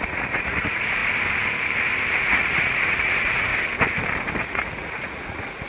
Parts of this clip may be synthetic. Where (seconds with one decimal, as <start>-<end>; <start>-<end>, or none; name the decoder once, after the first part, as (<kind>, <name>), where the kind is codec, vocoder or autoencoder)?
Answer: 0.0-1.0 (vocoder, Vocos); 2.2-3.5; 4.4-5.7